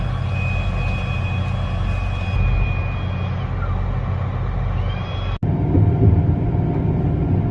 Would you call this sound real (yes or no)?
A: yes